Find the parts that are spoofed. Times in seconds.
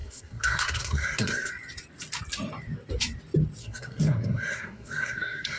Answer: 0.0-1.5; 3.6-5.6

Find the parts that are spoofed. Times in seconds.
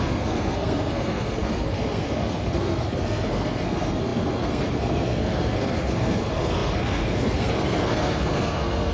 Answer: 0.0-8.9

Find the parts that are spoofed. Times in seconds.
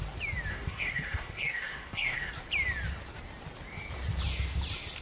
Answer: 0.5-2.3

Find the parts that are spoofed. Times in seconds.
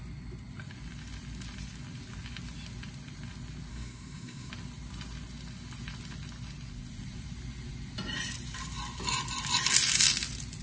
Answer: 3.7-4.5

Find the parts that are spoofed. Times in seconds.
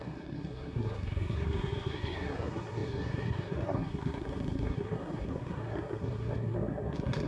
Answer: 0.0-7.3